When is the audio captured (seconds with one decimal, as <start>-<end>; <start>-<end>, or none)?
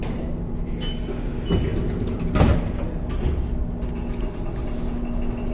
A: 0.0-5.5